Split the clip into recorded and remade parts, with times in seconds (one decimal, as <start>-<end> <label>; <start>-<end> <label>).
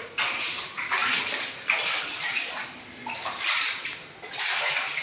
0.0-5.0 recorded